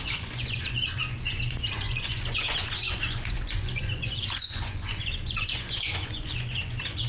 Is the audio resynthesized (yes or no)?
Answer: yes